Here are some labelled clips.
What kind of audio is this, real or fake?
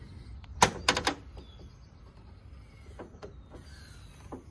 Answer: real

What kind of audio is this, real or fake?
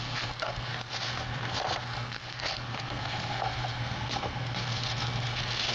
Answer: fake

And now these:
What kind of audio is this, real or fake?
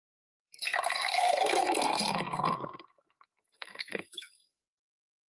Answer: fake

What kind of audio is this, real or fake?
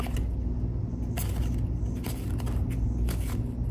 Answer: real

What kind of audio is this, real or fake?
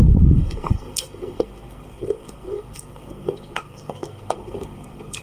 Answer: fake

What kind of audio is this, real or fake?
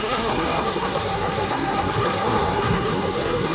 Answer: fake